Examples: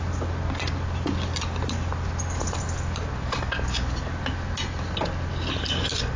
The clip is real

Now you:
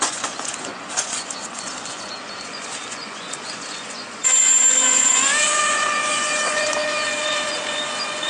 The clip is fake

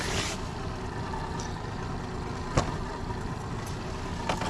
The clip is real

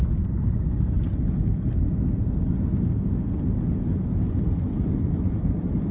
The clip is real